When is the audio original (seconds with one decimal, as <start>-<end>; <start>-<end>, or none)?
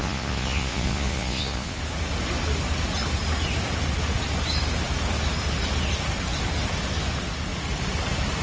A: 1.8-8.4